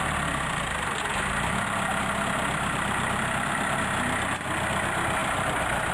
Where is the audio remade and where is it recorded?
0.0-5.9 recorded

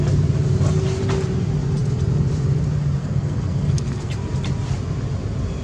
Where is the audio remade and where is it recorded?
0.0-3.0 recorded; 3.0-4.1 remade; 4.1-5.6 recorded

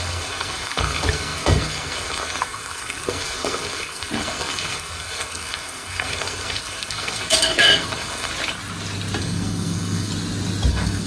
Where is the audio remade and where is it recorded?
0.0-8.3 remade; 8.3-9.2 recorded; 9.2-10.1 remade; 10.1-10.7 recorded; 10.7-11.1 remade

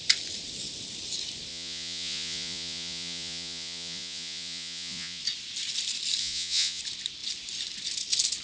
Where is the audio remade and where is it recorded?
0.0-1.5 recorded; 1.5-5.2 remade; 5.2-6.2 recorded; 6.2-6.8 remade; 6.8-8.4 recorded